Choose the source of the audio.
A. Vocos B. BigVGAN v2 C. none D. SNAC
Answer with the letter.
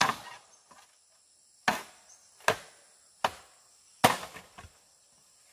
C